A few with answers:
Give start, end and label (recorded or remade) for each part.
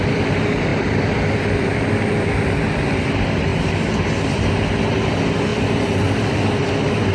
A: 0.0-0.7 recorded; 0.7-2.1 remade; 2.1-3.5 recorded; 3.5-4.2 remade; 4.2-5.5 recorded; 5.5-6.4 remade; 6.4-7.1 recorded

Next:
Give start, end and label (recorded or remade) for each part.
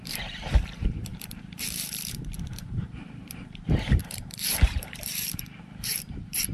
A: 0.0-6.5 remade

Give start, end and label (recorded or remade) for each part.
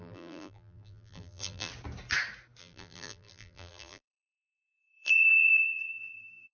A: 0.0-1.7 remade; 1.7-2.6 recorded; 2.6-6.5 remade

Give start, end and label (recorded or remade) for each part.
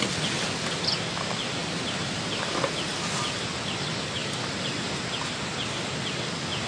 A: 0.0-1.6 recorded; 1.6-2.5 remade; 2.5-4.2 recorded; 4.2-5.0 remade; 5.0-6.7 recorded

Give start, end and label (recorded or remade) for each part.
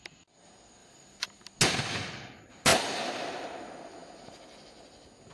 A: 0.0-0.8 recorded; 0.8-1.4 remade; 1.4-2.7 recorded; 2.7-3.5 remade; 3.5-5.3 recorded